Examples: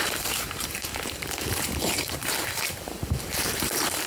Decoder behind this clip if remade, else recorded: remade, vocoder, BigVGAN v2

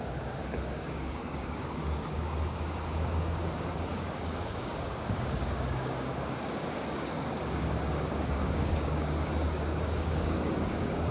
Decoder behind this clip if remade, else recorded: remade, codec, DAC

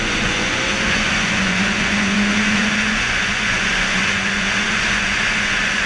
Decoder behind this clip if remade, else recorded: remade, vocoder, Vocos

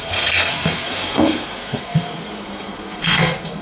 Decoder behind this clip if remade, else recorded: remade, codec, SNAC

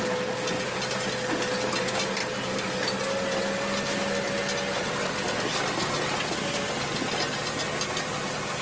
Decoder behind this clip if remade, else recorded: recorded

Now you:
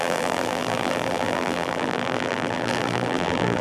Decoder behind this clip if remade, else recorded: remade, vocoder, BigVGAN v2